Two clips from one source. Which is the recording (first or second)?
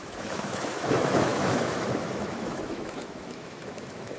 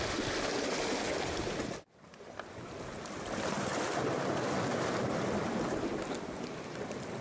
second